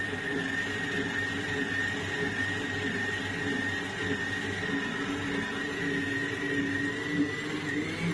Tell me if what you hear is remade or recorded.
recorded